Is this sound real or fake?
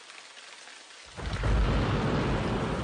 real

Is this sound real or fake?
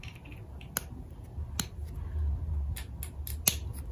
real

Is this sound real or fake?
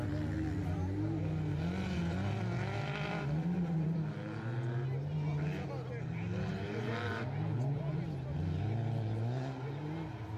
real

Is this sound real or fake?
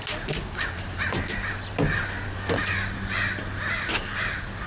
real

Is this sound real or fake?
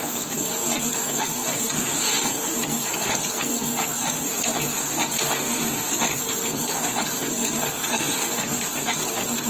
fake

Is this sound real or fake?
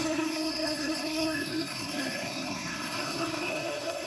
fake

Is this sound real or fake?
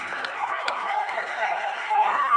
fake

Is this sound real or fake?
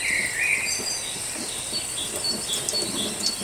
real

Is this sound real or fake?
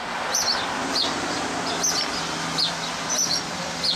real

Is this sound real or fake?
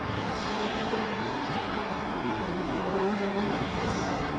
fake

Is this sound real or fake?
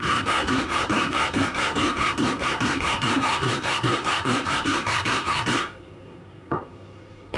fake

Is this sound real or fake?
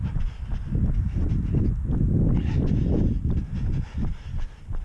real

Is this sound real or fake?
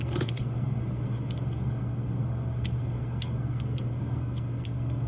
fake